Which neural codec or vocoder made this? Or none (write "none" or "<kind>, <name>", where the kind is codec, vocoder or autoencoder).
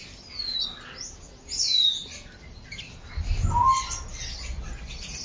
none